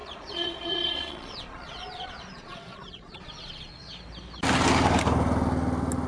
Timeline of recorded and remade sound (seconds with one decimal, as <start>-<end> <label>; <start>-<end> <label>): 0.0-3.7 remade; 3.7-6.1 recorded